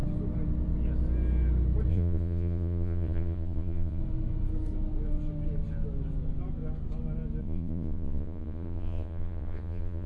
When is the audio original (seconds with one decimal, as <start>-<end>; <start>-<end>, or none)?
0.0-1.9; 4.0-7.4

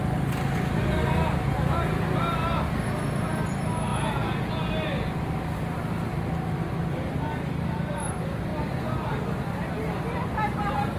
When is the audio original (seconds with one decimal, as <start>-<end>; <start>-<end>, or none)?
0.0-3.9; 4.5-11.0

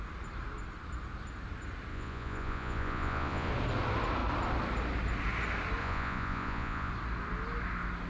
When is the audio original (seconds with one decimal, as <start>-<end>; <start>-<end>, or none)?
0.0-1.9; 3.5-5.8; 6.9-8.1

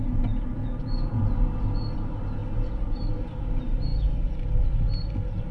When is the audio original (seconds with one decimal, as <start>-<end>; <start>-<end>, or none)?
0.0-0.6; 1.2-5.5

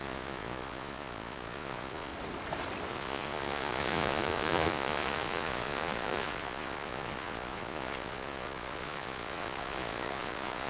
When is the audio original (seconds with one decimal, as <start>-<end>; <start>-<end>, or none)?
2.1-2.9

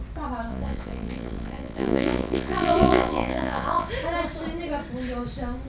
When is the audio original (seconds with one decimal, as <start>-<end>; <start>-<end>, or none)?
0.0-0.5; 3.9-5.7